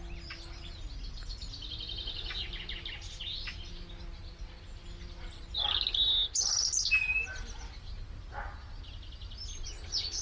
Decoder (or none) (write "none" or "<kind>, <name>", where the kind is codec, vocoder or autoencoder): none